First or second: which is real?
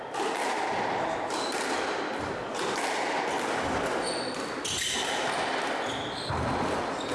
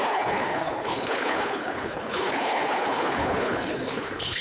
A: first